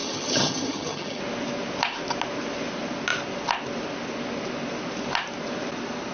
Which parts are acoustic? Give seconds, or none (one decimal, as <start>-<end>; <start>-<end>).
1.2-6.1